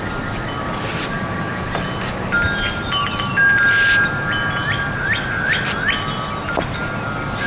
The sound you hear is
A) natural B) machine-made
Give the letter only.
A